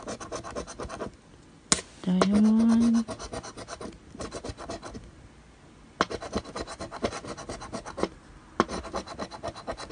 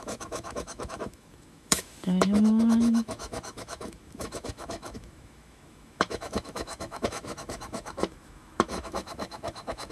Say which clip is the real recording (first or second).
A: first